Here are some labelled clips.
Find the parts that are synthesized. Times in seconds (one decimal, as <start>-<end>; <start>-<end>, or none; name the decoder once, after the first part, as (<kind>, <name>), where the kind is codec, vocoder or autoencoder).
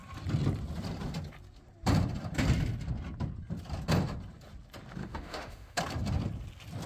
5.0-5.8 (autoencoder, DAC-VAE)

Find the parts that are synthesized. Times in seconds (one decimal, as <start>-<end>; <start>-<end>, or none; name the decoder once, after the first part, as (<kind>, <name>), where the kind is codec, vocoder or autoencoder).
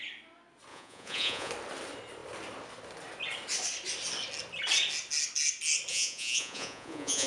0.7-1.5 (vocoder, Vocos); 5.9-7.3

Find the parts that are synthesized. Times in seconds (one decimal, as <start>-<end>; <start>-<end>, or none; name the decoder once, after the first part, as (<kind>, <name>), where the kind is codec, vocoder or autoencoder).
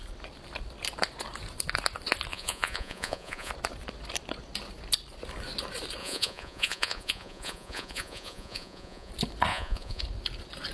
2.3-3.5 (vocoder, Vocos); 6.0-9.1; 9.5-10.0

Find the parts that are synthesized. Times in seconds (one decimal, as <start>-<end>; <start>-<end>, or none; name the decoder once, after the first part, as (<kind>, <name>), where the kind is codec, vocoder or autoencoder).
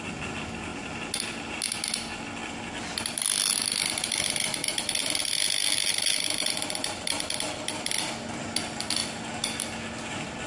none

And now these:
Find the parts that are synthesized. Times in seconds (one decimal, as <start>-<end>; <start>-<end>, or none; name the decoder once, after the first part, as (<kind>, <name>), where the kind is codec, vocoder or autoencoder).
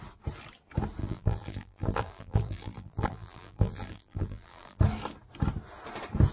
1.0-4.8 (vocoder, BigVGAN v2)